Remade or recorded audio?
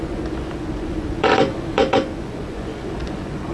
remade